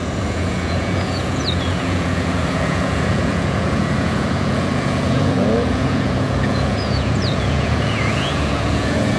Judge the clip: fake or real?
fake